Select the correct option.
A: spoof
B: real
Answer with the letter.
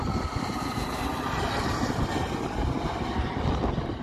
B